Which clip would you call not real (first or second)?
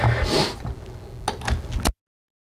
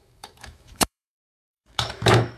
second